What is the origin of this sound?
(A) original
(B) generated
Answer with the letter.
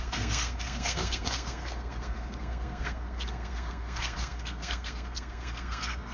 B